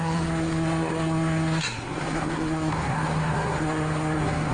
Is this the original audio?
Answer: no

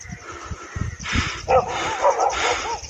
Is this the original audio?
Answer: yes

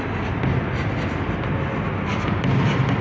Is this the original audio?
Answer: yes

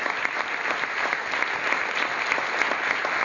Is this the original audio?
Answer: yes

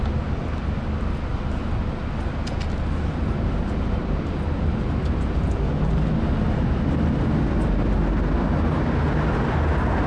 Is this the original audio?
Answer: yes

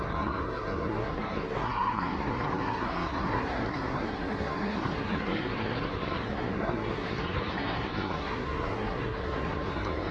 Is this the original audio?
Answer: no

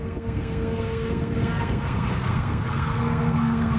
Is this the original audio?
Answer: no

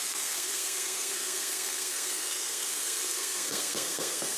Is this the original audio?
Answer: no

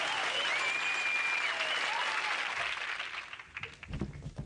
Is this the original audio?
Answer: yes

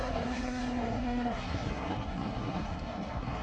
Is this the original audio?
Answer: no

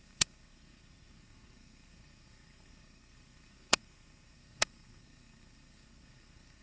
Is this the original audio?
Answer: no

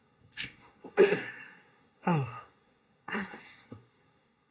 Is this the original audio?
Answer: no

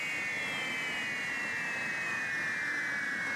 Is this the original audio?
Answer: yes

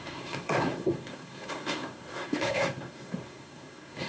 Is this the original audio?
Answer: no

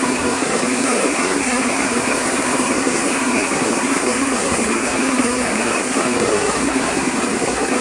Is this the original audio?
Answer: no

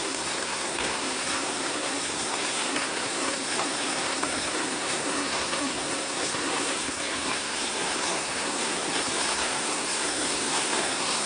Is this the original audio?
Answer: no